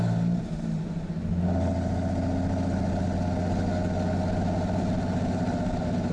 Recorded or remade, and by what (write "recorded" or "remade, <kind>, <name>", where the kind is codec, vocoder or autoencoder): recorded